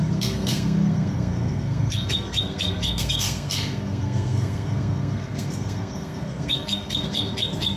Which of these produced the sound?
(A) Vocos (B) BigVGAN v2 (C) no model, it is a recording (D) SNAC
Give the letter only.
D